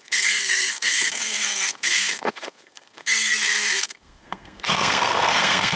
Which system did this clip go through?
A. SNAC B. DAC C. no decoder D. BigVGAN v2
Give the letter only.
A